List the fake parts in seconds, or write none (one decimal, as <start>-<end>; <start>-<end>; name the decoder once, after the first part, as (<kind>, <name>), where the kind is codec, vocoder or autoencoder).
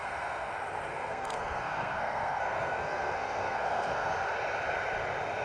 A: 0.0-0.5 (codec, SNAC); 0.9-4.1